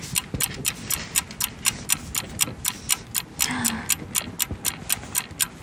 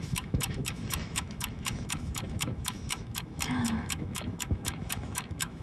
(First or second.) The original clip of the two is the first